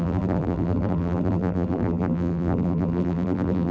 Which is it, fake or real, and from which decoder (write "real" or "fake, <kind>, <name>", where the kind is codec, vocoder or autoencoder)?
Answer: fake, vocoder, BigVGAN v2